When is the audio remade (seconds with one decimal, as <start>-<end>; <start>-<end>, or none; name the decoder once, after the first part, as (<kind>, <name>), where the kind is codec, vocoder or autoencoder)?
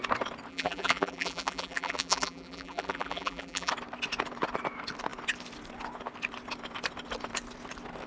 0.5-3.7 (vocoder, BigVGAN v2)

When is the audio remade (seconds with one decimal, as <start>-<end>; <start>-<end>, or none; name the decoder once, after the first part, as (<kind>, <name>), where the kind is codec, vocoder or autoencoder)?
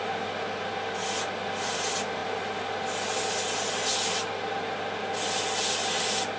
none